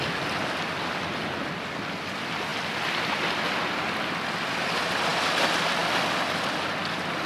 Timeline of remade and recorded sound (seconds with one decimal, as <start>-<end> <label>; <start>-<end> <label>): 0.0-7.3 recorded